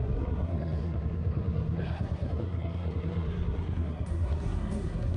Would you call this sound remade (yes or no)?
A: yes